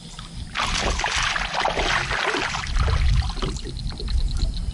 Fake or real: real